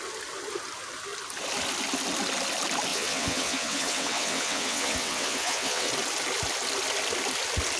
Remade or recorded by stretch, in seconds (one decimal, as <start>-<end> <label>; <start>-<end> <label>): 0.0-2.9 recorded; 2.9-5.9 remade; 5.9-7.8 recorded